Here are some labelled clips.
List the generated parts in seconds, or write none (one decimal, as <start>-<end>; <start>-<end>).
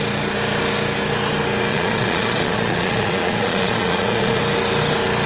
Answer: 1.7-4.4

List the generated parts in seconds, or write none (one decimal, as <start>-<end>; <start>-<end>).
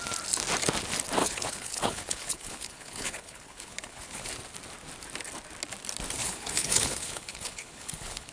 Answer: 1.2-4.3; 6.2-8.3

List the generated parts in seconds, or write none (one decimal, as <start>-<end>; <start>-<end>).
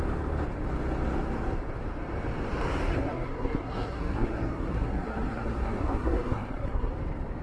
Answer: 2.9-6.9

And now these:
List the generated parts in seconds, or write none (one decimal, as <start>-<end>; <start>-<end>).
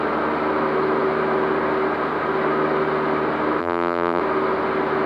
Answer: 3.6-4.2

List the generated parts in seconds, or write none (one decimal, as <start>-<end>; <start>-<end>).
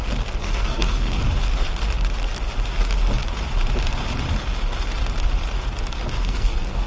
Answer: 0.4-1.2; 6.2-6.9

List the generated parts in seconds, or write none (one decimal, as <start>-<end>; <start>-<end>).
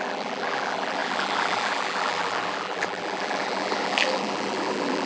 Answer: 0.0-5.1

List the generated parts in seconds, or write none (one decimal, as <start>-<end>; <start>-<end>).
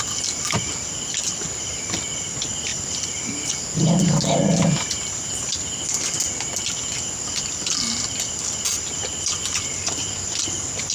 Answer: 2.7-3.5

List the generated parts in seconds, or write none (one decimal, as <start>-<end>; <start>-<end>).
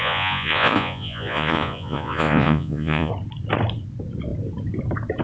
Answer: 0.0-3.1